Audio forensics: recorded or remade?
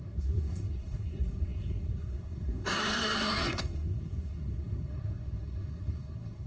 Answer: remade